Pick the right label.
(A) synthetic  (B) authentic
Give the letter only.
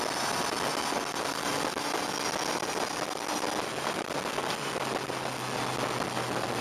B